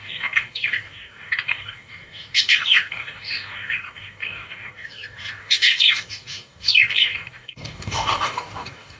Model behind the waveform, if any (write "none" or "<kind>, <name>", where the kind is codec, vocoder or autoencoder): codec, DAC